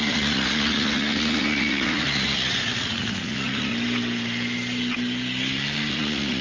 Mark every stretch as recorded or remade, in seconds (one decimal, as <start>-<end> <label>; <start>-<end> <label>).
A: 0.0-3.7 remade; 3.7-5.9 recorded; 5.9-6.4 remade